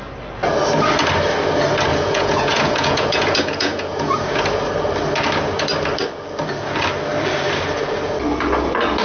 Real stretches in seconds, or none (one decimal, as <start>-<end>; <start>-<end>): 0.0-1.9; 4.4-9.0